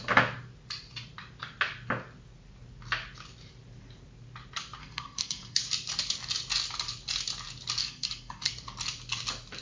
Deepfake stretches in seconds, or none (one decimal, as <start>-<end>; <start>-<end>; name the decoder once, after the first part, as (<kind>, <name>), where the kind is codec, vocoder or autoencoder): 4.8-5.6 (codec, SNAC); 7.8-8.5